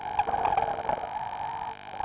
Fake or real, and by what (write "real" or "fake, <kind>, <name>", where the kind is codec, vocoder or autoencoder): real